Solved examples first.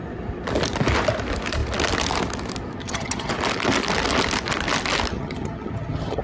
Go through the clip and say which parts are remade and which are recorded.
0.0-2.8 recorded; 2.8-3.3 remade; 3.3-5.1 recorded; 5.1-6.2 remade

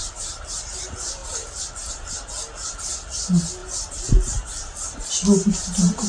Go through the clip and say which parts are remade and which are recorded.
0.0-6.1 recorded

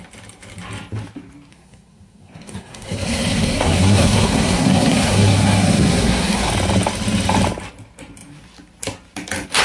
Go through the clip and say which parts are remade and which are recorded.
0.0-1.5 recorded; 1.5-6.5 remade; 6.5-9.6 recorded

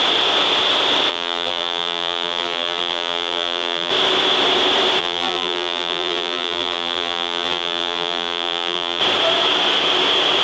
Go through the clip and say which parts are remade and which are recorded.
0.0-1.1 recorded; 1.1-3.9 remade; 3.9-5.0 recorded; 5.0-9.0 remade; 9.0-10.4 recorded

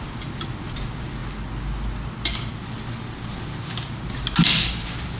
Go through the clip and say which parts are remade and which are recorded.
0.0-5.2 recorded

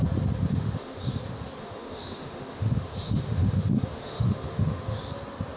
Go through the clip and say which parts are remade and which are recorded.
0.0-0.5 recorded; 0.5-1.0 remade; 1.0-1.6 recorded; 1.6-5.0 remade; 5.0-5.6 recorded

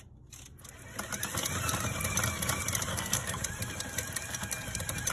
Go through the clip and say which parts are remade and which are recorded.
0.0-2.9 recorded; 2.9-3.4 remade; 3.4-5.1 recorded

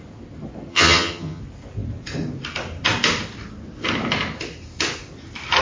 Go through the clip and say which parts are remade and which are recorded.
0.0-0.7 recorded; 0.7-1.4 remade; 1.4-5.6 recorded